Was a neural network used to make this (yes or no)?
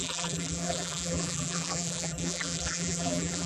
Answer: yes